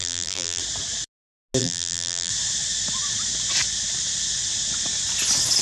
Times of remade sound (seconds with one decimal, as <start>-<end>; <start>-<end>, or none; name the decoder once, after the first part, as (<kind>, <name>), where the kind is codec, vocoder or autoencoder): 0.0-0.6 (vocoder, BigVGAN v2); 1.6-2.3